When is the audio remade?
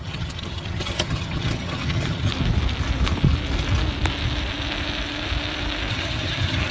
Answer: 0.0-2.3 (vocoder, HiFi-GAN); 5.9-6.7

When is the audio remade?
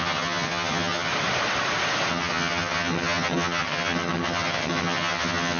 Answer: 0.0-1.1 (vocoder, HiFi-GAN); 2.1-5.6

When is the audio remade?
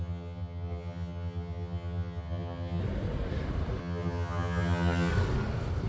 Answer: 0.0-2.8 (vocoder, HiFi-GAN); 3.8-5.1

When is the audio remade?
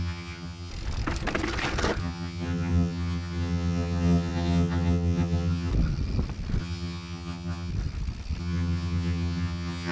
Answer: 0.0-0.7 (vocoder, HiFi-GAN); 2.0-5.7; 6.6-7.7; 8.4-9.9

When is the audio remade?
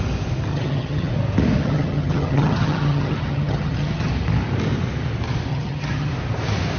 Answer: 0.5-1.1 (vocoder, HiFi-GAN); 1.6-4.1; 5.5-6.1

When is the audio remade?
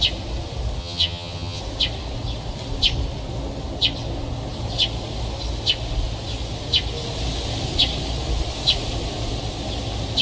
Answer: 0.8-1.6 (vocoder, HiFi-GAN)